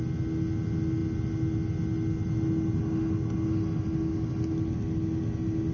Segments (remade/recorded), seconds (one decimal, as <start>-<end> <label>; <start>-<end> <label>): 0.0-5.7 recorded